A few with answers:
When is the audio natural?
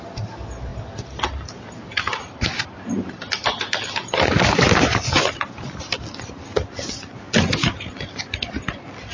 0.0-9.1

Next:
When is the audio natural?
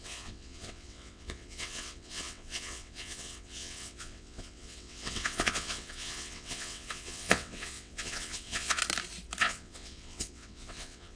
8.8-9.4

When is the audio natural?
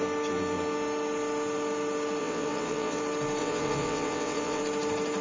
0.0-2.2; 3.0-3.4; 4.6-5.2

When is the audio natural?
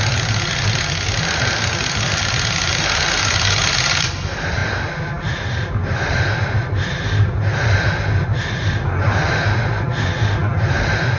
0.0-11.2